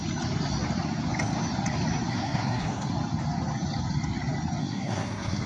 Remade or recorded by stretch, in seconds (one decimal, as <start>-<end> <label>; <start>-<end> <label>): 0.0-2.1 recorded; 2.1-2.9 remade; 2.9-4.6 recorded; 4.6-5.5 remade